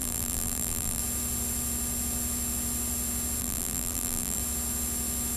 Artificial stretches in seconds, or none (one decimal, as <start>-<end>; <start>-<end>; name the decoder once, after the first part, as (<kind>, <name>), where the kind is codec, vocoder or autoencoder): 0.0-1.0 (vocoder, BigVGAN v2); 3.4-4.4